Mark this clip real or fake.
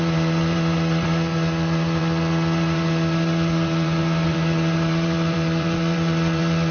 fake